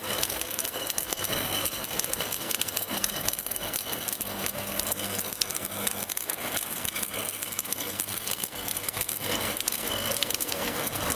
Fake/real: fake